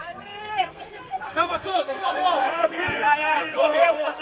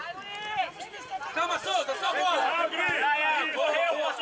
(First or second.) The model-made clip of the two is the first